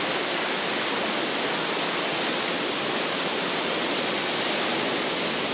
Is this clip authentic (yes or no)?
yes